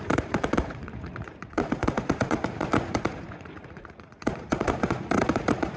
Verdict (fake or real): fake